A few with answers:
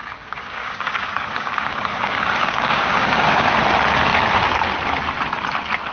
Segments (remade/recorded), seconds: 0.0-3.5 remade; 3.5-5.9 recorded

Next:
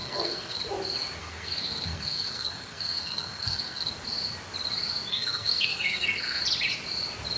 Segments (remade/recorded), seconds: 0.0-0.6 remade; 0.6-1.2 recorded; 1.2-3.9 remade; 3.9-5.1 recorded; 5.1-6.4 remade; 6.4-7.4 recorded

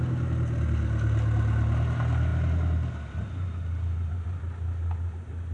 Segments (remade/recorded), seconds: 0.0-5.5 recorded

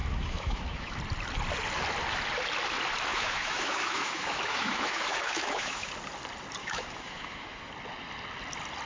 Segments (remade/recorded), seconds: 0.0-1.0 remade; 1.0-3.1 recorded; 3.1-5.9 remade; 5.9-6.6 recorded; 6.6-7.7 remade; 7.7-8.9 recorded

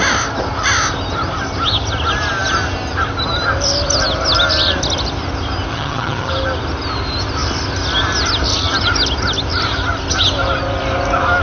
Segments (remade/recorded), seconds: 0.0-5.7 recorded; 5.7-6.3 remade; 6.3-11.4 recorded

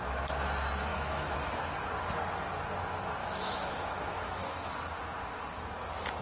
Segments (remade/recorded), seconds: 0.0-0.9 recorded; 0.9-1.5 remade; 1.5-3.2 recorded; 3.2-4.7 remade; 4.7-6.2 recorded